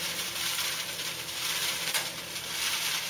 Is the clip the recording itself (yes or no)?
no